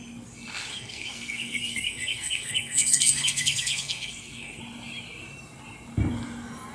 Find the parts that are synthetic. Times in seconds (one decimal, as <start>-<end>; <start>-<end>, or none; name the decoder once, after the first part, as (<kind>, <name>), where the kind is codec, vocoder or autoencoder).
0.7-4.6 (codec, SNAC)